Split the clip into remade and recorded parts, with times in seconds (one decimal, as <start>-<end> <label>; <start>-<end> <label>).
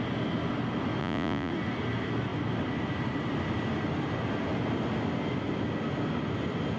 0.0-1.0 recorded; 1.0-1.5 remade; 1.5-6.8 recorded